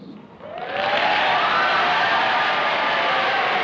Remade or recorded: recorded